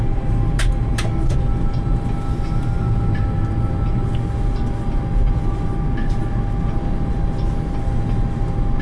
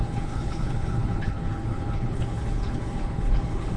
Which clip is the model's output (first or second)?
second